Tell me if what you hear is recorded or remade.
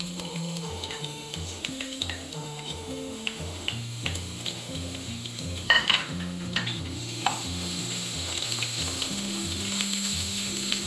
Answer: remade